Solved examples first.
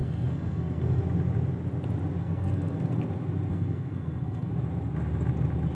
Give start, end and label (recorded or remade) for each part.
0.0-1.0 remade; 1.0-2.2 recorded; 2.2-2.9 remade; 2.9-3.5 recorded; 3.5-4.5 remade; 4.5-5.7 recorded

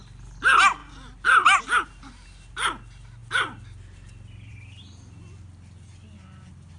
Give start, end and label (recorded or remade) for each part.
0.0-6.8 recorded

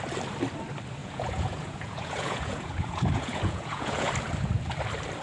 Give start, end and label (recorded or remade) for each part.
0.0-1.0 recorded; 1.0-4.1 remade; 4.1-5.2 recorded

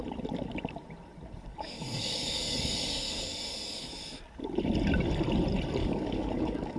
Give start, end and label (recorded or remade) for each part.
0.0-1.5 recorded; 1.5-3.9 remade; 3.9-5.8 recorded; 5.8-6.8 remade

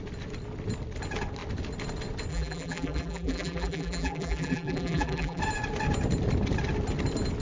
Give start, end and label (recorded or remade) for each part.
0.0-2.3 recorded; 2.3-5.4 remade; 5.4-7.4 recorded

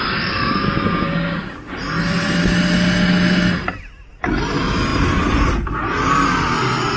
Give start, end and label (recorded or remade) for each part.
0.0-7.0 recorded

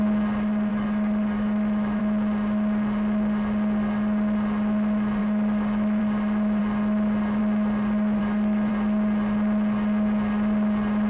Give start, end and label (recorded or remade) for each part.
0.0-0.7 recorded; 0.7-2.0 remade; 2.0-5.2 recorded; 5.2-6.0 remade; 6.0-8.2 recorded; 8.2-8.7 remade; 8.7-11.1 recorded

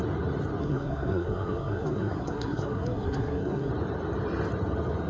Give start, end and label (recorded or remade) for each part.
0.0-0.6 recorded; 0.6-3.7 remade; 3.7-5.1 recorded